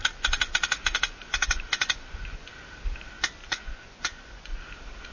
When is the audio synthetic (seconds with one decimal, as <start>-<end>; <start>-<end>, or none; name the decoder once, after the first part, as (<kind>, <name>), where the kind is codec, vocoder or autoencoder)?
0.8-2.5 (vocoder, Vocos); 3.4-4.6